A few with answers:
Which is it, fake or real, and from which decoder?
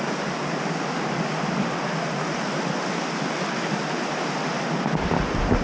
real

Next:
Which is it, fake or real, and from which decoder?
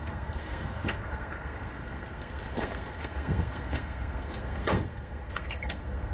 fake, codec, SNAC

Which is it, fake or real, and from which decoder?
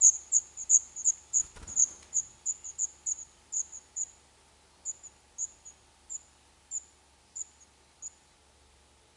real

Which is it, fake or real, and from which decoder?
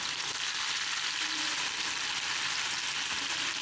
real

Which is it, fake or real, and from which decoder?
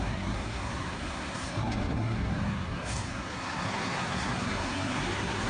fake, codec, SNAC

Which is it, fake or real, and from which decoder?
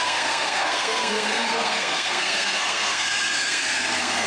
fake, codec, SNAC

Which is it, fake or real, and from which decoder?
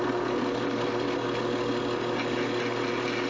real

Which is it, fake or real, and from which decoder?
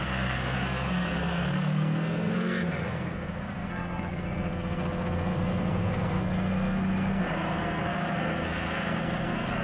fake, codec, SNAC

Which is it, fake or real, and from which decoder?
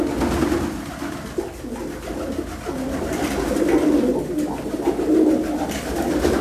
real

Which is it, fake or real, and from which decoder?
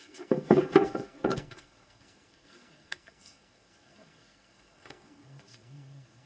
fake, codec, SNAC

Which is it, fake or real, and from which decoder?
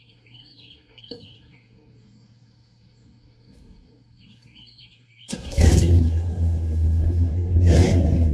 fake, codec, SNAC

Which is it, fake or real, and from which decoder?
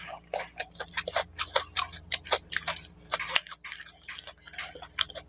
real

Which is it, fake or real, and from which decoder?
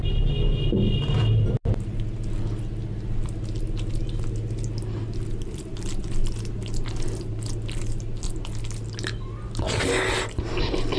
real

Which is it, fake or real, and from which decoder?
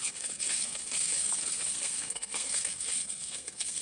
fake, codec, SNAC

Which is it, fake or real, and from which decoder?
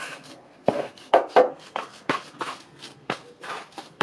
fake, codec, SNAC